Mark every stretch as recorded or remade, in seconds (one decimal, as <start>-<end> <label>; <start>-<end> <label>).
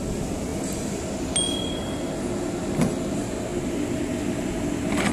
0.0-5.1 recorded